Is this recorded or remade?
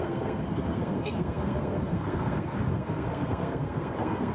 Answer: remade